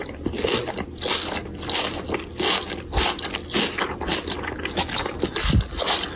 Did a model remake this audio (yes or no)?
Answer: no